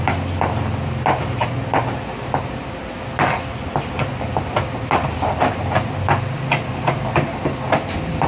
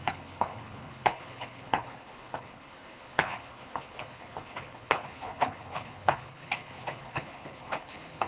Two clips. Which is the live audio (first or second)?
first